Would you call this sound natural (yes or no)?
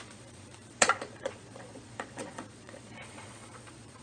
no